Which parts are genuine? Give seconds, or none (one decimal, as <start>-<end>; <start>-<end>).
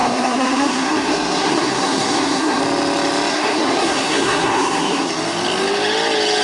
2.6-3.3; 5.1-6.4